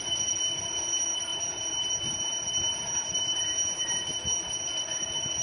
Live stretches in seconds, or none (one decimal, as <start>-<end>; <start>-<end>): 0.0-1.3; 4.5-5.4